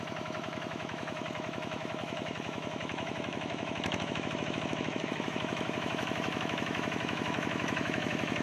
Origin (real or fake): fake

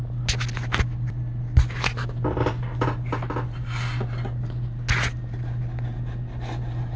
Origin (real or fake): real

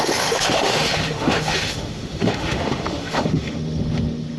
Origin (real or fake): fake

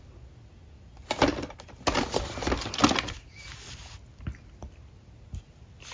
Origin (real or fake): real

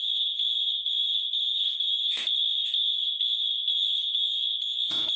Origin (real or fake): fake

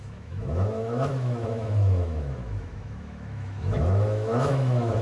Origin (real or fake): fake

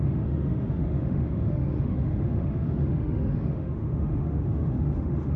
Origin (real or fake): fake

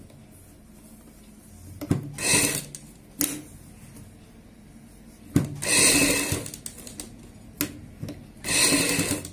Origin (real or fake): real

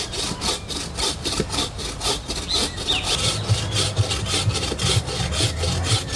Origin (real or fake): real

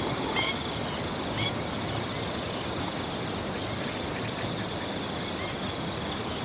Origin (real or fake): real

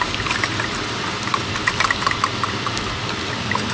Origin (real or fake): real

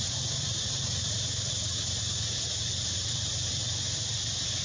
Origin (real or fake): real